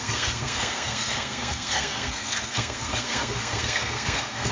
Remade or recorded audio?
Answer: remade